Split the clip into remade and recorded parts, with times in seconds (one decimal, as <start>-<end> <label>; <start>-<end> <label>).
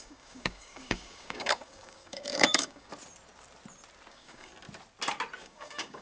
0.0-2.9 remade; 2.9-4.1 recorded; 4.1-4.5 remade; 4.5-5.4 recorded; 5.4-6.0 remade